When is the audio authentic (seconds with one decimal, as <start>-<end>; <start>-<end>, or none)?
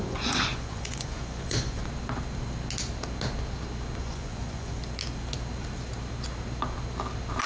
1.8-4.0; 4.8-7.5